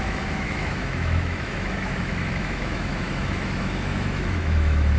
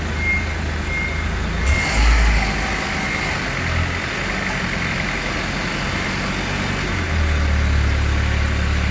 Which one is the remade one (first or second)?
first